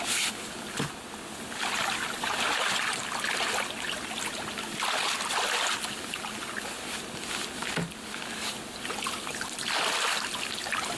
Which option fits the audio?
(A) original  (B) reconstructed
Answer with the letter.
A